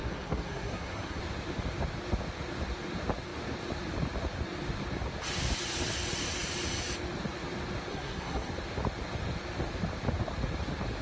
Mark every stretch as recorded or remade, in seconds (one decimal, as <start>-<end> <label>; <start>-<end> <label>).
0.0-1.2 remade; 1.2-7.9 recorded; 7.9-8.5 remade; 8.5-11.0 recorded